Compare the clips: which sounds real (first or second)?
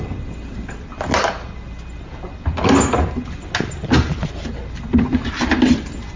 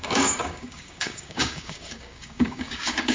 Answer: first